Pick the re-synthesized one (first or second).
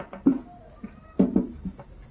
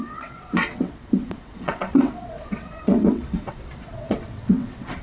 second